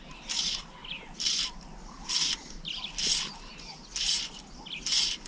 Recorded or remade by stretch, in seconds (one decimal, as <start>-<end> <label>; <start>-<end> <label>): 0.0-5.3 recorded